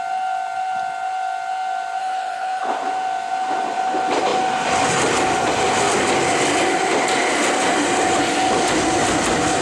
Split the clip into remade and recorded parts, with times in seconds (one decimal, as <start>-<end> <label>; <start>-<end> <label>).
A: 0.0-2.0 recorded; 2.0-2.6 remade; 2.6-9.6 recorded